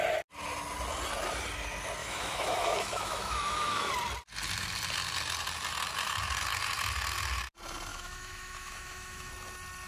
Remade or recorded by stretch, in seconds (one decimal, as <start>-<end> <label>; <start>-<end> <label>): 0.0-2.0 recorded; 2.0-3.9 remade; 3.9-7.9 recorded; 7.9-9.3 remade; 9.3-9.9 recorded